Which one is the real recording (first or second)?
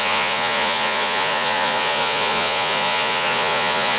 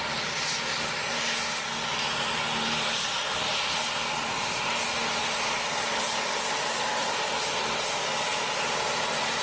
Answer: second